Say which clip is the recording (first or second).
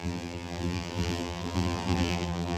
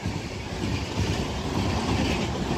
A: second